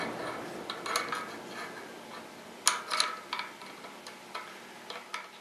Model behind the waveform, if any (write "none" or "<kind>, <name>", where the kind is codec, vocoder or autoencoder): none